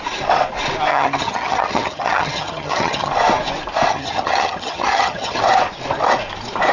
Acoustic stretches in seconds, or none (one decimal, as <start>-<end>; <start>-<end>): 0.0-0.9; 3.1-3.9; 5.4-6.7